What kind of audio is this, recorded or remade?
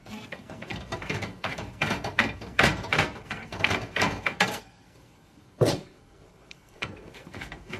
remade